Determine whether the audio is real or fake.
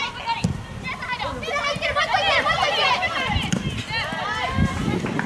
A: real